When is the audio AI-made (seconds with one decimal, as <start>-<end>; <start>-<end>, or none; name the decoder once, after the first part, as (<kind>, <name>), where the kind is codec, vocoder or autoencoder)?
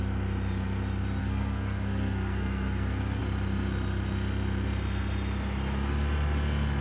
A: 1.2-3.2 (codec, SNAC)